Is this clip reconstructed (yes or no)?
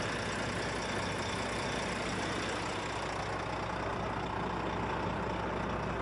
no